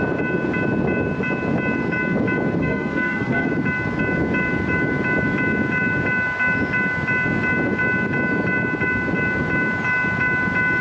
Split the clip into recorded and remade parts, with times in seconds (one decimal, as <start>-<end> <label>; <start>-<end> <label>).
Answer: 0.0-2.6 recorded; 2.6-3.5 remade; 3.5-10.8 recorded